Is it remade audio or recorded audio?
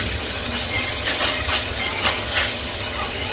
remade